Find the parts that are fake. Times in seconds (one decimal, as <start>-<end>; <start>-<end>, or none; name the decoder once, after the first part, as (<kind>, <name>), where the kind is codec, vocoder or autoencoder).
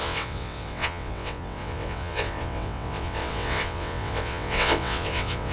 0.0-5.5 (vocoder, WaveNeXt)